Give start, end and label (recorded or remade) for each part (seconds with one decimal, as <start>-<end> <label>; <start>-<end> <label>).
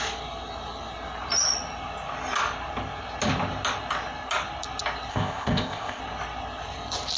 0.0-5.1 recorded; 5.1-6.0 remade; 6.0-7.2 recorded